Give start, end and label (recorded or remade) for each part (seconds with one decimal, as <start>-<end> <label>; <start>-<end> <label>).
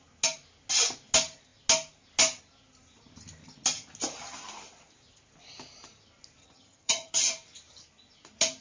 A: 0.0-6.4 recorded; 6.4-7.1 remade; 7.1-8.6 recorded